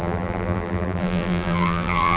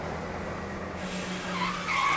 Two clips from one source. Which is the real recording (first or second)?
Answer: second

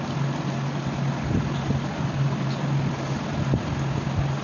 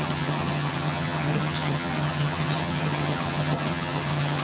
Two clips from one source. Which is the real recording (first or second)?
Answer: first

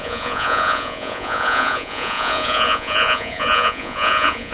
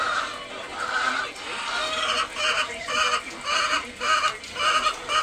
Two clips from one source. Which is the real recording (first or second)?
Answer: second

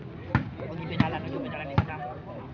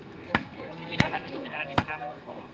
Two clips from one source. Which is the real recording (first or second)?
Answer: first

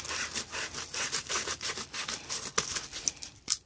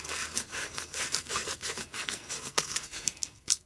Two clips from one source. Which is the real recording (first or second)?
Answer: first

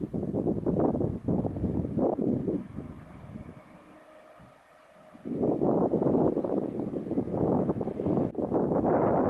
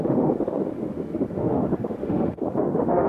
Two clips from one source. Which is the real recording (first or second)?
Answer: first